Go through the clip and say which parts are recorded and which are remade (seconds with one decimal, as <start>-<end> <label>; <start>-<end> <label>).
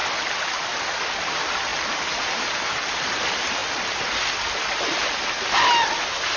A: 0.0-6.4 recorded